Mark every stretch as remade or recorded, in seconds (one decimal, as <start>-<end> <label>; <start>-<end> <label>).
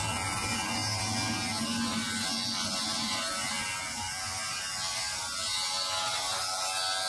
0.0-7.1 recorded